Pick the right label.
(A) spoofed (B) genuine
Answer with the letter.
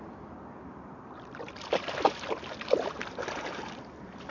B